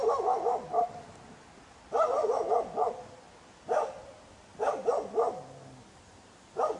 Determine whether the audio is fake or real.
real